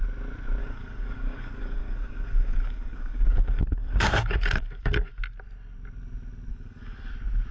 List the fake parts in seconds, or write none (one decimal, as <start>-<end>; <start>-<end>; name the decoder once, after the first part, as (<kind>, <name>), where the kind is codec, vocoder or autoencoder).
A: 0.6-5.1 (codec, DAC); 6.5-7.1